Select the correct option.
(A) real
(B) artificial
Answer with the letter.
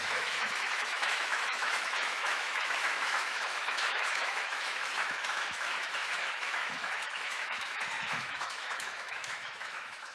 B